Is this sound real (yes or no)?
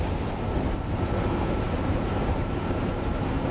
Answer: no